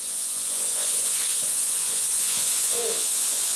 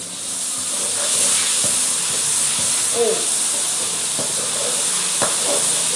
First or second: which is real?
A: second